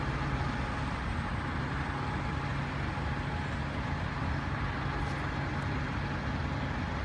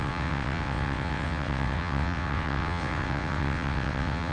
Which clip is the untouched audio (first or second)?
first